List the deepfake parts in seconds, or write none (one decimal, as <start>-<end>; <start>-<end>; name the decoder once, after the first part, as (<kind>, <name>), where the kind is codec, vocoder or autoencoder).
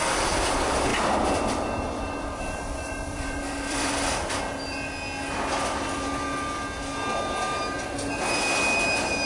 0.9-4.4 (vocoder, BigVGAN v2)